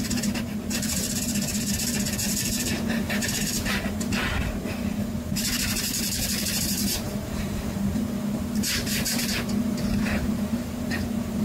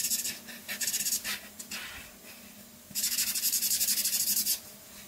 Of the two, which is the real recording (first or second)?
second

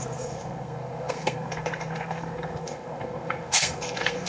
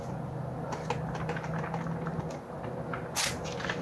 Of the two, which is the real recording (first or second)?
second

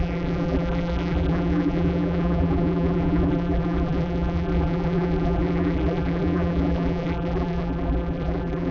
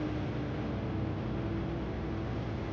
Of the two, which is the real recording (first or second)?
second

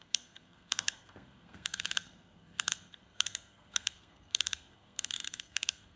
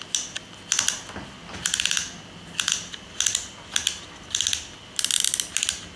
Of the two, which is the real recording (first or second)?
second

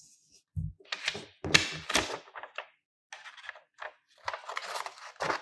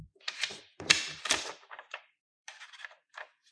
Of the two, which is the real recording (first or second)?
first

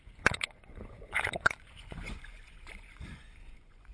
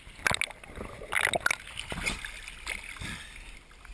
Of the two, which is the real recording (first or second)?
second